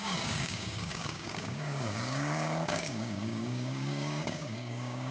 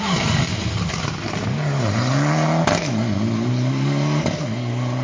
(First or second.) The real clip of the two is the second